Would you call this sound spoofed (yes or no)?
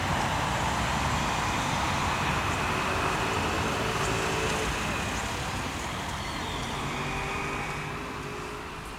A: no